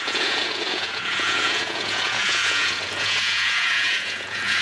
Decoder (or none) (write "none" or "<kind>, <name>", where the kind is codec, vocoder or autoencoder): vocoder, Vocos